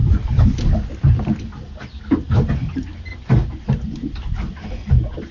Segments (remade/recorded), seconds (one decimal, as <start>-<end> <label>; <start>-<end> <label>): 0.0-2.3 remade; 2.3-5.3 recorded